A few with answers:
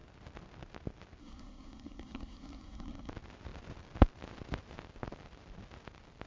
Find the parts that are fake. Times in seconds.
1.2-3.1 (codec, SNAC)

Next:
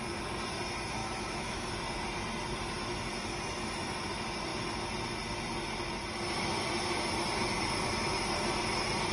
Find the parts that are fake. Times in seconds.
1.0-1.7 (autoencoder, DAC-VAE)

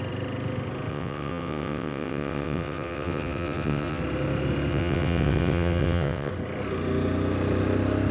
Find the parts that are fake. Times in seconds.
0.9-4.0 (vocoder, WaveNeXt); 4.7-6.3

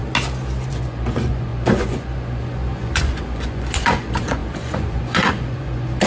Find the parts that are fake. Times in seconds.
0.7-6.1 (vocoder, Vocos)

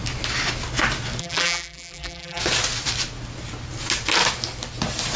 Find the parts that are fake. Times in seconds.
1.2-2.4 (vocoder, BigVGAN v2)